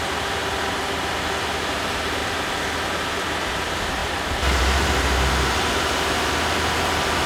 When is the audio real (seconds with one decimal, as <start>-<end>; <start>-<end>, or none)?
2.2-3.0